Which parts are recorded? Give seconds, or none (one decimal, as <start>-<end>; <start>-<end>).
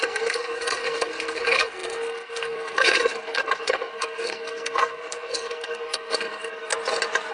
6.7-7.3